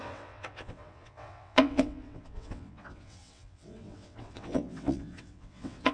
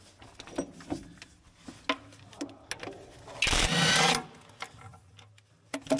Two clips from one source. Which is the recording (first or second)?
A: second